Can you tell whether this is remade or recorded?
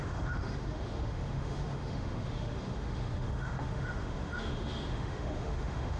remade